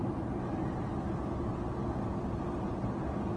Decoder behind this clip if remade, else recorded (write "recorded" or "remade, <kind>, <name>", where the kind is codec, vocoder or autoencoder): recorded